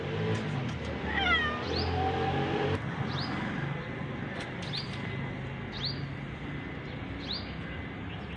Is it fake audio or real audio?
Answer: real